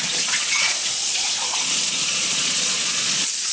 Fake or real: fake